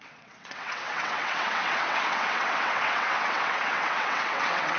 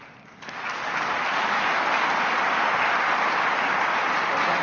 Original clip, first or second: second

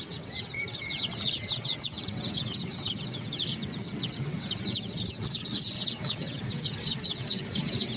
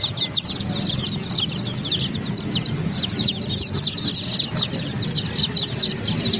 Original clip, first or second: second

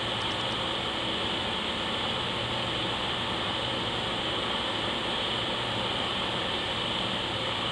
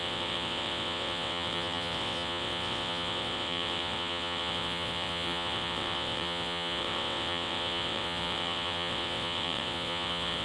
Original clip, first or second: first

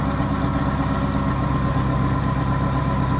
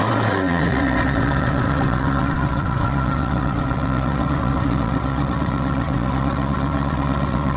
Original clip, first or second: first